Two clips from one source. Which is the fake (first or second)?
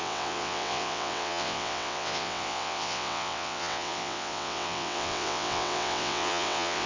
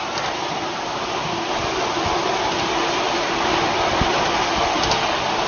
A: first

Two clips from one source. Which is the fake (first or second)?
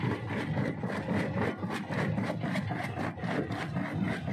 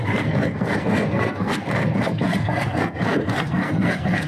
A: second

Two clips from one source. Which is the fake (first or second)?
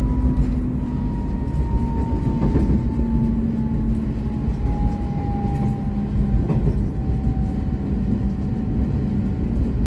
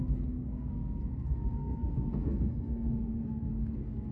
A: second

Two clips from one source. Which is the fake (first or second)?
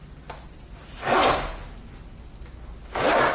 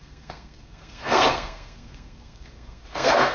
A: second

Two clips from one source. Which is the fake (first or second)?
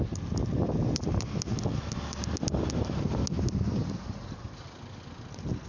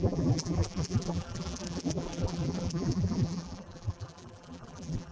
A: second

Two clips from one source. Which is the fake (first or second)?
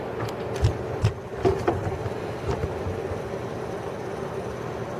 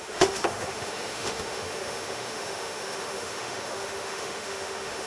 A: second